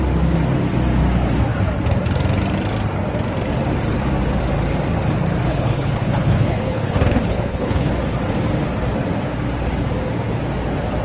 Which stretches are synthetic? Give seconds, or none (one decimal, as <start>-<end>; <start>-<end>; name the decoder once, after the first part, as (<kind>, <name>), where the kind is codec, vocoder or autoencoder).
5.5-7.9 (codec, HILCodec)